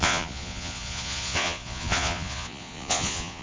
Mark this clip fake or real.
fake